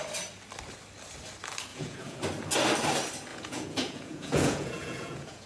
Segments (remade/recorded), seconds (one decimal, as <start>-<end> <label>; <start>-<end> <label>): 0.0-1.7 recorded; 1.7-2.2 remade; 2.2-3.3 recorded; 3.3-5.5 remade